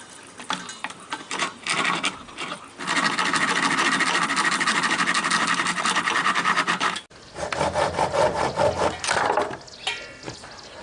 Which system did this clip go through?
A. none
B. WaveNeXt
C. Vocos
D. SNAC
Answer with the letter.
A